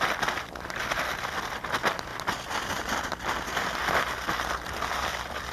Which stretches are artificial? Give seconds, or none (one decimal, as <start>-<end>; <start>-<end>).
none